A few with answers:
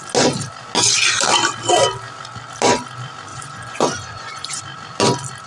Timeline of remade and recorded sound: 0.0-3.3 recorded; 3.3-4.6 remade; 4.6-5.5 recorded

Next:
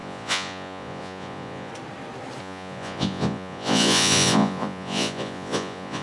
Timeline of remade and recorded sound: 0.0-1.7 remade; 1.7-2.4 recorded; 2.4-6.0 remade

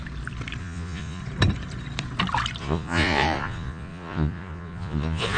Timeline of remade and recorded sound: 0.0-0.6 recorded; 0.6-1.2 remade; 1.2-2.6 recorded; 2.6-5.4 remade